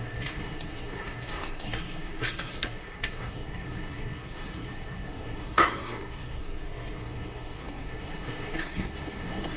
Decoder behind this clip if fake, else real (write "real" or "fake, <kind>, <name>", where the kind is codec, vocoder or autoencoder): fake, codec, SNAC